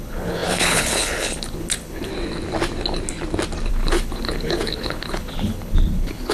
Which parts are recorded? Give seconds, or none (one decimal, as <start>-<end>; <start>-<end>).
2.1-3.7